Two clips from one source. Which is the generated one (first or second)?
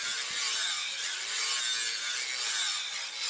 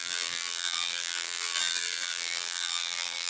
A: second